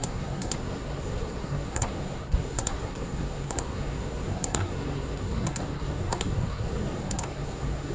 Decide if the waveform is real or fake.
fake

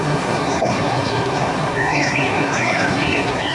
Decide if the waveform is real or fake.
fake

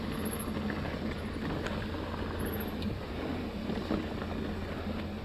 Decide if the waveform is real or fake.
real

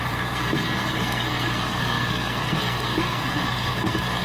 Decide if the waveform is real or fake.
fake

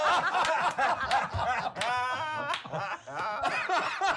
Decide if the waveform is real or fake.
real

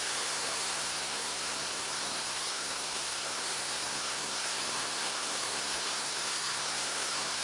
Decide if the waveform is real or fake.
fake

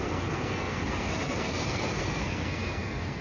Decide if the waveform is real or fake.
fake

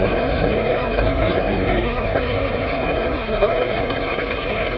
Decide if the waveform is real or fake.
fake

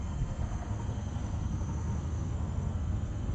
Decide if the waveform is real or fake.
fake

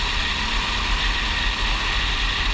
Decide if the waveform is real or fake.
real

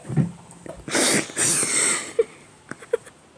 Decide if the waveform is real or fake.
real